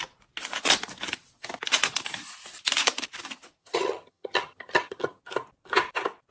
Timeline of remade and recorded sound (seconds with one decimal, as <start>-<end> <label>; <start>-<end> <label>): 0.0-3.6 recorded; 3.6-5.2 remade; 5.2-6.3 recorded